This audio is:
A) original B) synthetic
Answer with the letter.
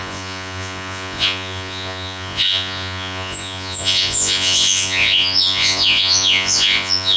B